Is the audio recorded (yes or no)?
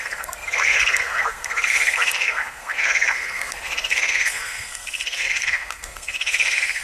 no